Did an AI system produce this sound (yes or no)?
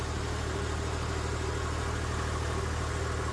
no